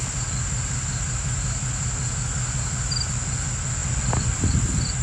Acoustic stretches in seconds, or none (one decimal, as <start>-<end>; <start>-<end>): 0.0-3.8; 4.5-5.0

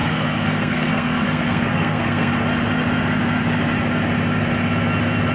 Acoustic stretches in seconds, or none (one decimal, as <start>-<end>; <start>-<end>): 2.3-5.3

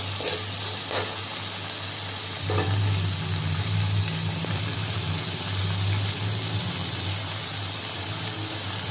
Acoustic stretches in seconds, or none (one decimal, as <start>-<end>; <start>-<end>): 0.0-8.9

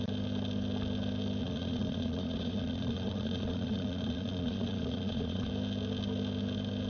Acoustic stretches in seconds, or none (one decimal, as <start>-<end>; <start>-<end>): 0.0-1.4; 5.5-6.9

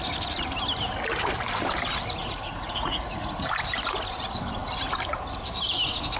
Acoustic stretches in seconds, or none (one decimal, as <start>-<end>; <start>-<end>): 0.0-2.2; 3.5-6.2

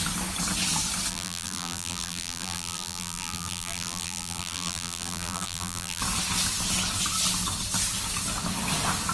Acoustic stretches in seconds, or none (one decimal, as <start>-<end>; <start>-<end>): 0.0-1.1; 6.0-9.1